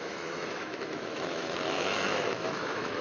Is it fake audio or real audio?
fake